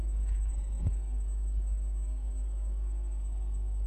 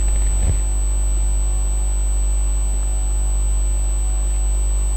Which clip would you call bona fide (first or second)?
second